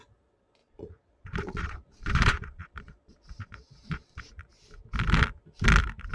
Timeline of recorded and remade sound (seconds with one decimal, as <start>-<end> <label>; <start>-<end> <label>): 0.0-0.6 recorded; 0.6-4.3 remade; 4.3-6.1 recorded